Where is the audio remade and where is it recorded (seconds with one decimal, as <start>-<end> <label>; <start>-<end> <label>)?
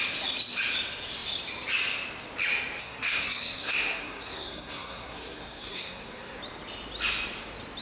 0.0-2.8 recorded; 2.8-6.4 remade; 6.4-7.8 recorded